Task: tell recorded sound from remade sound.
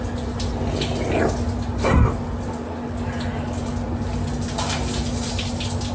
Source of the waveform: recorded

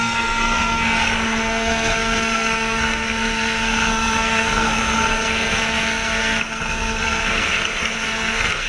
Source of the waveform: remade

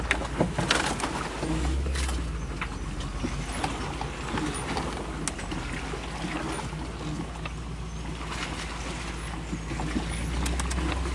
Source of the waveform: recorded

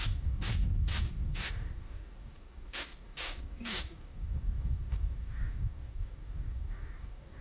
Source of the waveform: remade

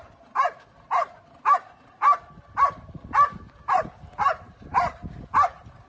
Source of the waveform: recorded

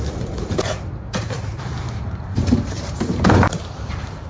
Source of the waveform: remade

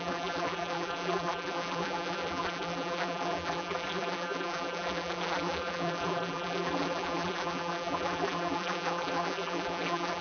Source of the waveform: remade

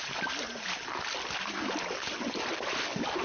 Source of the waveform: recorded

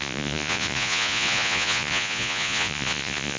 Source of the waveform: remade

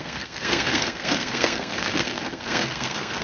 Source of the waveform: remade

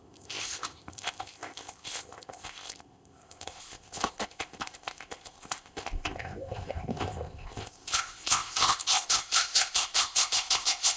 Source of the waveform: remade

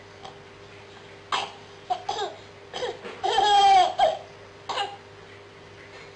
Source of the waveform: recorded